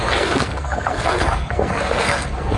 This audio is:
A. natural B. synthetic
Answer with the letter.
B